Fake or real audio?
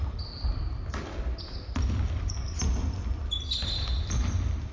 real